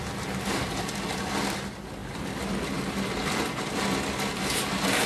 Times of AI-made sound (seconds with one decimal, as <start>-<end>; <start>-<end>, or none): none